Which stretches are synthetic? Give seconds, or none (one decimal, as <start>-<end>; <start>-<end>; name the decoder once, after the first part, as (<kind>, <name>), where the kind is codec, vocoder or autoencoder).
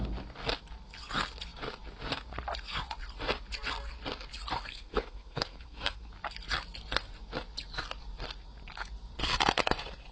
4.7-6.1 (codec, SNAC)